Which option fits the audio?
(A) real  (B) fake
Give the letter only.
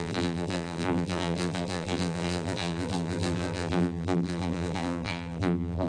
B